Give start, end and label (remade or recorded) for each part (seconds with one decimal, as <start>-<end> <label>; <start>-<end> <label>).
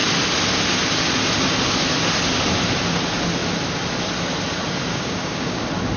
0.0-4.9 recorded; 4.9-5.6 remade; 5.6-6.0 recorded